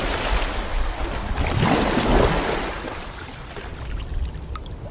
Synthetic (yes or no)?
no